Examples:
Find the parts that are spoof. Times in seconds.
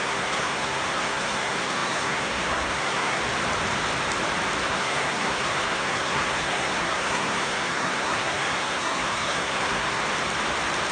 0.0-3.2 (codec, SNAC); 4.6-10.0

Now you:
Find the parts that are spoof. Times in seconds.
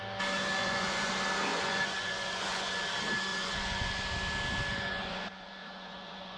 0.6-1.1 (vocoder, Vocos); 1.5-2.8; 3.3-4.0; 4.7-6.4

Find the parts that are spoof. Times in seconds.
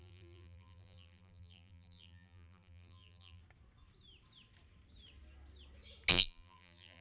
0.0-3.4 (vocoder, BigVGAN v2); 6.1-7.0